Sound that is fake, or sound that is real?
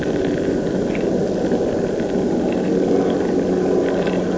real